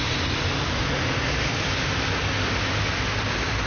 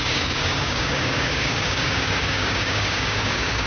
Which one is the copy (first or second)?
second